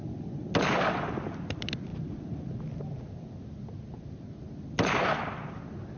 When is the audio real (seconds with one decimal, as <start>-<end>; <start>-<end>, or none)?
0.0-6.0